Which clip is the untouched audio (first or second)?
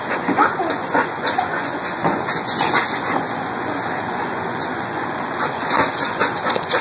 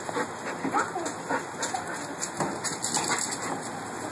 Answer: second